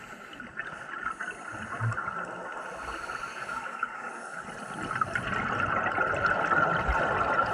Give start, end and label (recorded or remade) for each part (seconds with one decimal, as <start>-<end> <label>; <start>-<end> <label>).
0.0-3.3 recorded; 3.3-4.5 remade; 4.5-7.5 recorded